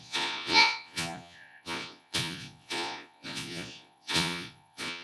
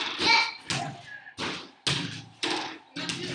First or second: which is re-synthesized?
first